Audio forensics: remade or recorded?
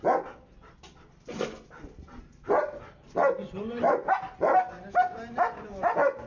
recorded